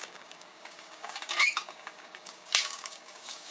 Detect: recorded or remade remade